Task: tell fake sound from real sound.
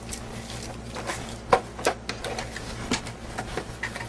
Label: real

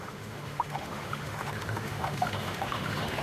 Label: fake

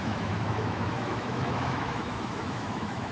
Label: fake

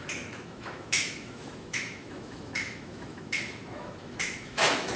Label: fake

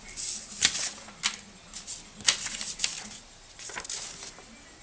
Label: real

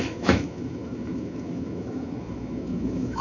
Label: fake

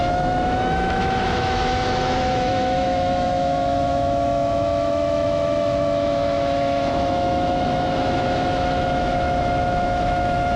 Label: fake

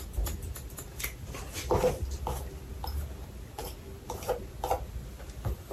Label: real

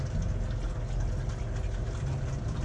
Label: real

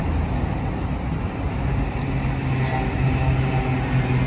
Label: real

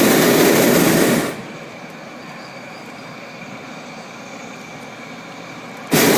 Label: real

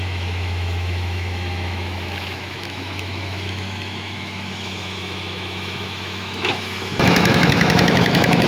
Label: fake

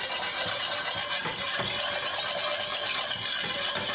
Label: real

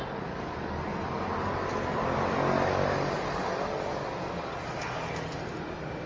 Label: real